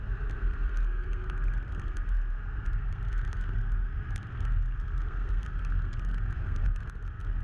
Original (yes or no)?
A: no